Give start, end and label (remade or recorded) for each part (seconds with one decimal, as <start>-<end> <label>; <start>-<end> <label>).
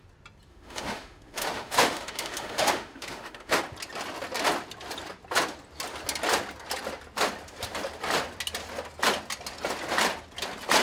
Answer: 0.0-0.5 recorded; 0.5-3.6 remade; 3.6-10.8 recorded